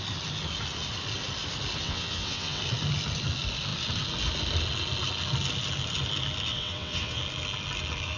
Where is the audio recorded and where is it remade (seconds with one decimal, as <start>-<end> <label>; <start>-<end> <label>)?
0.0-1.8 recorded; 1.8-2.6 remade; 2.6-6.5 recorded; 6.5-7.2 remade; 7.2-8.2 recorded